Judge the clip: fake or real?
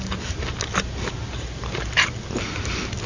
real